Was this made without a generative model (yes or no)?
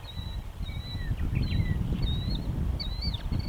yes